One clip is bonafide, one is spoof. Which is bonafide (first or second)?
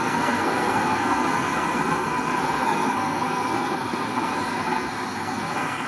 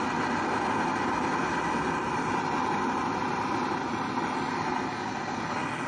second